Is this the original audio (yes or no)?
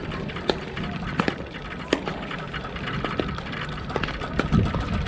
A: yes